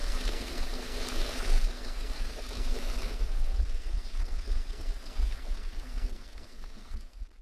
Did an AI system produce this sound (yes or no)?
yes